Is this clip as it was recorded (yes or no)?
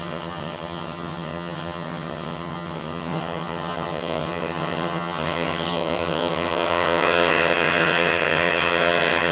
no